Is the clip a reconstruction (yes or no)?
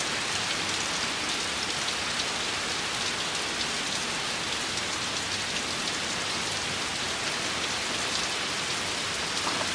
no